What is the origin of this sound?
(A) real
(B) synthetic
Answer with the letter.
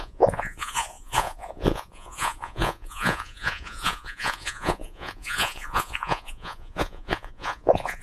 B